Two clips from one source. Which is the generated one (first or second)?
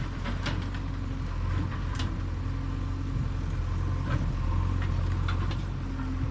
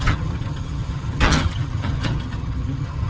second